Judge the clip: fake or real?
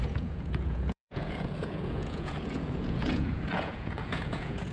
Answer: fake